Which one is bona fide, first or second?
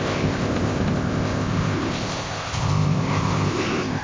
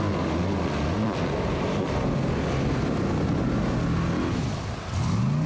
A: second